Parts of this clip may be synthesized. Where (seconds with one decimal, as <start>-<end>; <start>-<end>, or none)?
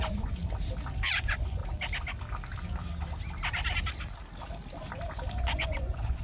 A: 0.0-0.4; 1.1-1.6; 5.3-6.2